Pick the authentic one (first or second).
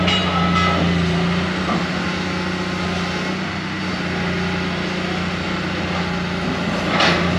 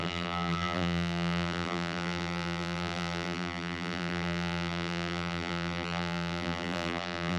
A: first